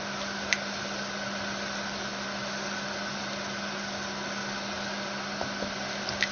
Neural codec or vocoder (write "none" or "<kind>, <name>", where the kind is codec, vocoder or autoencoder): none